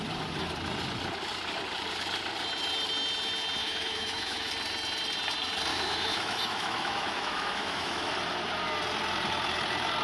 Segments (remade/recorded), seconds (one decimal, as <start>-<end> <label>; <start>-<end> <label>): 0.0-3.6 recorded; 3.6-4.5 remade; 4.5-5.7 recorded; 5.7-8.1 remade; 8.1-10.0 recorded